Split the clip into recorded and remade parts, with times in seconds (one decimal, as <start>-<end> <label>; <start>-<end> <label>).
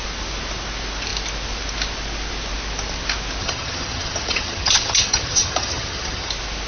0.0-3.4 recorded; 3.4-6.3 remade; 6.3-6.7 recorded